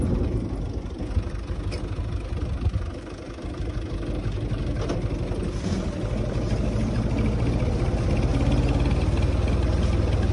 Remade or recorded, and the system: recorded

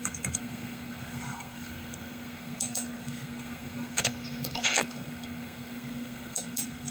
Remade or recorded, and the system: remade, codec, SNAC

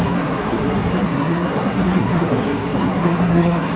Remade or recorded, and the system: remade, codec, SNAC